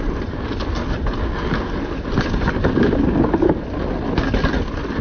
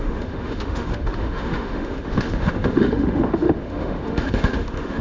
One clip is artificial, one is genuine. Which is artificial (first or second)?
second